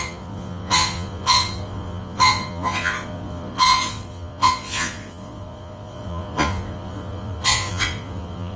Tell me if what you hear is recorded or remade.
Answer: remade